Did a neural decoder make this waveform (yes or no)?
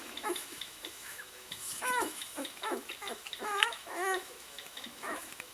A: yes